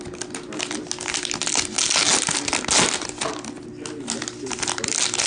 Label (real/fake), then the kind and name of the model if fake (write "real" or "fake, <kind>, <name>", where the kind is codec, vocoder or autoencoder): real